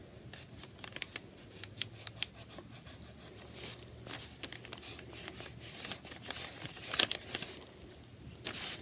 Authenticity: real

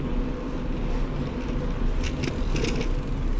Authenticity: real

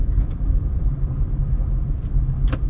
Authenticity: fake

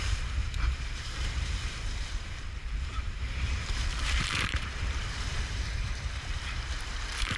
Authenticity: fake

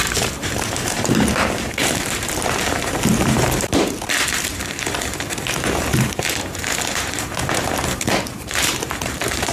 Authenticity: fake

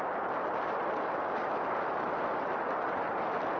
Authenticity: real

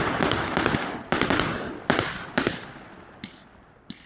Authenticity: fake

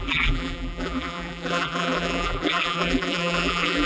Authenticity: fake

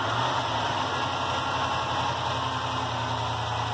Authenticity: real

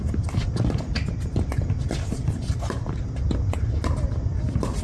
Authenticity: real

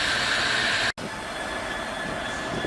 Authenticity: real